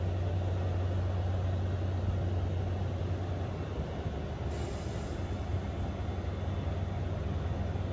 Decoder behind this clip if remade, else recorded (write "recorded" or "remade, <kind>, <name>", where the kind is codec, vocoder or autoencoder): recorded